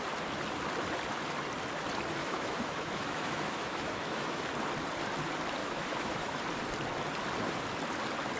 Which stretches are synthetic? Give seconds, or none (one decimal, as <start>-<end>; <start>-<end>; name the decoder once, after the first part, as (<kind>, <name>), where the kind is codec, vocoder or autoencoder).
2.2-4.4 (autoencoder, DAC-VAE); 5.6-6.4

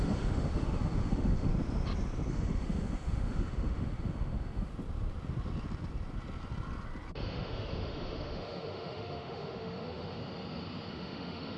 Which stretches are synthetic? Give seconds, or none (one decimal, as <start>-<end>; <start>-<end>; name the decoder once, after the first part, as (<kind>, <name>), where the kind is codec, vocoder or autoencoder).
0.0-1.5 (autoencoder, DAC-VAE); 2.3-4.7; 7.1-10.2; 10.9-11.6

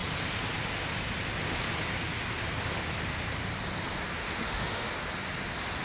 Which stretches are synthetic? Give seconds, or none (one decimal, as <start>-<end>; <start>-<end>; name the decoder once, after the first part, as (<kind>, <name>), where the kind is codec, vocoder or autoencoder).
4.2-4.9 (autoencoder, DAC-VAE)

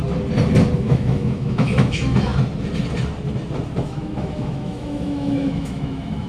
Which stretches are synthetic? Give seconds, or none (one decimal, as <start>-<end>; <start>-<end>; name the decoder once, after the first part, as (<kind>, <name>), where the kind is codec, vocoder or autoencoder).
0.8-2.3 (autoencoder, DAC-VAE); 3.8-6.3

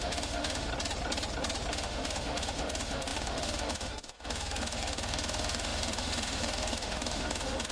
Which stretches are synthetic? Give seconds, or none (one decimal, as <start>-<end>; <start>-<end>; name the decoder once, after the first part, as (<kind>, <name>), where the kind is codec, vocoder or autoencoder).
0.0-0.7 (autoencoder, DAC-VAE); 1.7-7.7

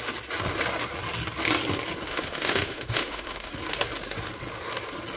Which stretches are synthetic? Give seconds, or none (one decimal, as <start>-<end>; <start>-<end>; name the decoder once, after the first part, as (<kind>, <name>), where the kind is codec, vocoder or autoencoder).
2.1-3.5 (autoencoder, DAC-VAE)

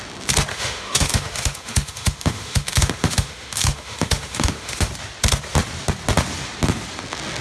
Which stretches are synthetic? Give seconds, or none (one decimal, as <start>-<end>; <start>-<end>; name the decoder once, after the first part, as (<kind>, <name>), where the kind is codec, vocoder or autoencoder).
0.5-4.9 (autoencoder, DAC-VAE)